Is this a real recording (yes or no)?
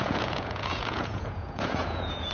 no